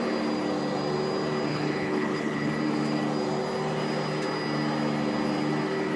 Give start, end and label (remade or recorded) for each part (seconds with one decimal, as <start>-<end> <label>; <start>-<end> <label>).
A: 0.0-1.5 recorded; 1.5-2.5 remade; 2.5-6.0 recorded